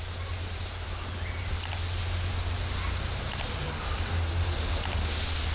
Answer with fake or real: real